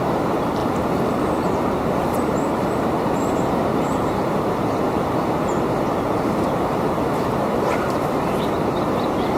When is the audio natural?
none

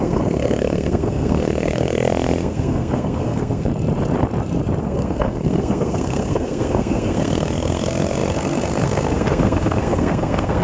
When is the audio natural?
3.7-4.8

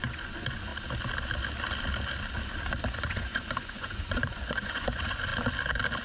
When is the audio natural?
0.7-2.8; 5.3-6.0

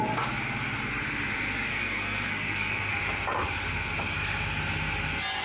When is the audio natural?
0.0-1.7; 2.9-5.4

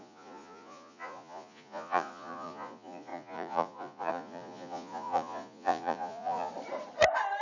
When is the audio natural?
6.5-7.4

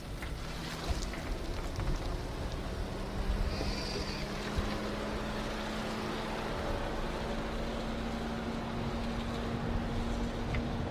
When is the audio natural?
0.0-10.9

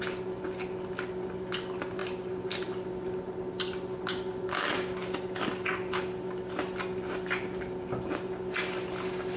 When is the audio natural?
0.0-9.4

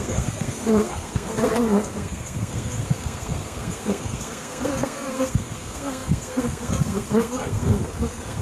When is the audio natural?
none